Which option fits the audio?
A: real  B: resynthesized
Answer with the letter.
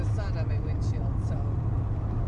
A